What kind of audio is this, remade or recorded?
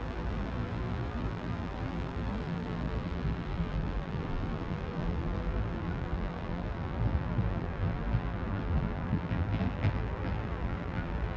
remade